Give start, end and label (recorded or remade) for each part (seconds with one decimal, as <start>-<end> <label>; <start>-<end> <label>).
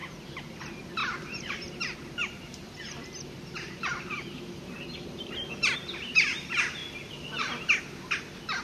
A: 0.0-1.0 recorded; 1.0-5.3 remade; 5.3-8.6 recorded